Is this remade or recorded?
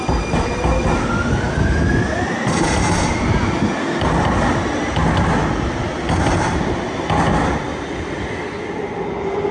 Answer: recorded